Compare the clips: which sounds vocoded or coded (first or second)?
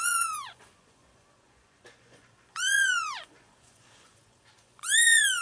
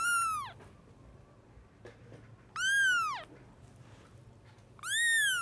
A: first